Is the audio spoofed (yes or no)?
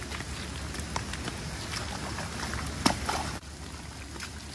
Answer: no